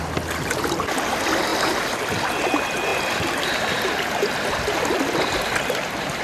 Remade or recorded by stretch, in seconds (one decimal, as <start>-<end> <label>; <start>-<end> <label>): 0.0-6.2 recorded